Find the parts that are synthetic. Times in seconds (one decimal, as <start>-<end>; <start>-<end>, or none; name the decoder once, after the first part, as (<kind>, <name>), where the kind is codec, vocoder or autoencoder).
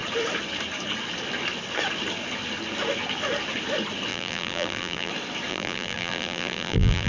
4.1-5.1 (vocoder, BigVGAN v2); 5.5-7.1